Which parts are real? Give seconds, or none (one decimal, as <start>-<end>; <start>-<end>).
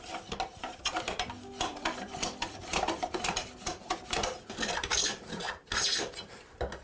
0.0-1.7; 5.8-6.8